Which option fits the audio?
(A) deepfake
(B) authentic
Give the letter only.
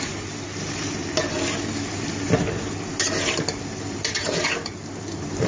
A